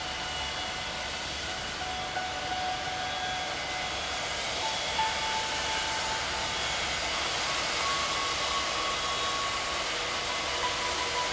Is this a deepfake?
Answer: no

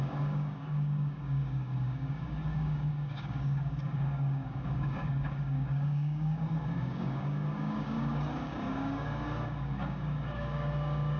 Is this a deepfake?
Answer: yes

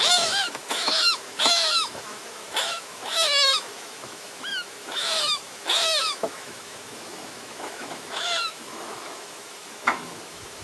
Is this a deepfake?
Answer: yes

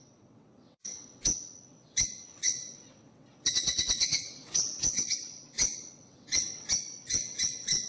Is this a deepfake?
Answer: yes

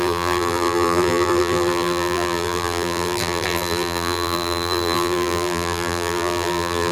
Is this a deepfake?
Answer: yes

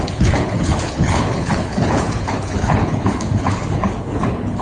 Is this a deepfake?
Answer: yes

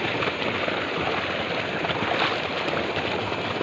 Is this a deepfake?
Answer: no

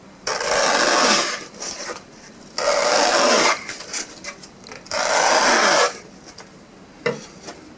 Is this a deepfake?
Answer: no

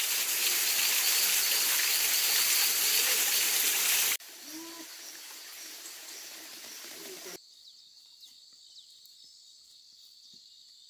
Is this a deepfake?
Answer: no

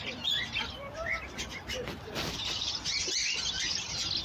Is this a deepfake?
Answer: no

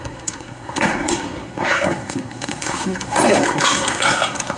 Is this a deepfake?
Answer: yes